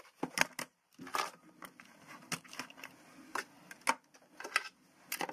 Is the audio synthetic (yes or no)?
no